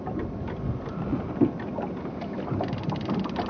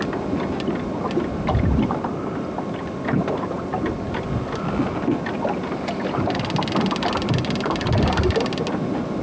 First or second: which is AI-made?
first